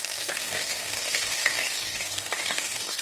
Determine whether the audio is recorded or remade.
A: remade